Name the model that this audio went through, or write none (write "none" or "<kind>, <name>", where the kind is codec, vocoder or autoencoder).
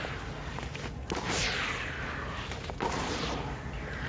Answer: none